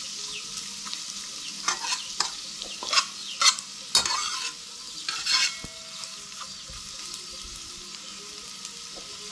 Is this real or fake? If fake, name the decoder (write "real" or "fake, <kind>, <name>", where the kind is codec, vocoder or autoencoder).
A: real